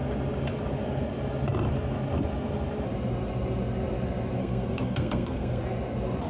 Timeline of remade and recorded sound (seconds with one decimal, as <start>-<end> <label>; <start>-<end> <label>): 0.0-4.4 recorded; 4.4-5.6 remade; 5.6-6.3 recorded